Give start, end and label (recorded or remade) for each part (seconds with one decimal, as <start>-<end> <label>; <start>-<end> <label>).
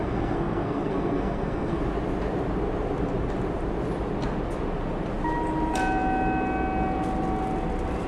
0.0-1.8 remade; 1.8-8.1 recorded